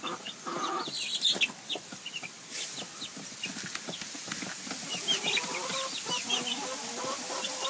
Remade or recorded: recorded